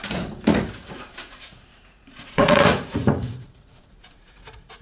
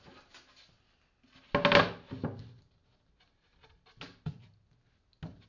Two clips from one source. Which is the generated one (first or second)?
first